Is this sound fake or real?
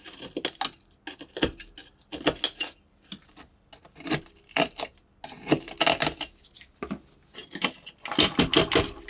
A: real